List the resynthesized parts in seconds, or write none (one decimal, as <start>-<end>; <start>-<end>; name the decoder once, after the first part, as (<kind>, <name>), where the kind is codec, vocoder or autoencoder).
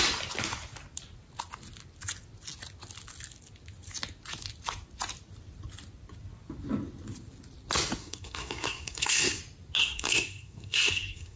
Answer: 8.0-9.4 (codec, SNAC); 9.8-11.4